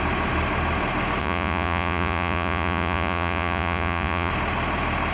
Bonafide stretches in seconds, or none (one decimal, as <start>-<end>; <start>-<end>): 0.0-1.2; 4.3-5.1